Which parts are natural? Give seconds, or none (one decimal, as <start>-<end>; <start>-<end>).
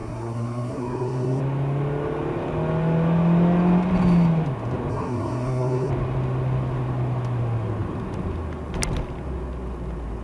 1.4-4.9; 5.9-10.2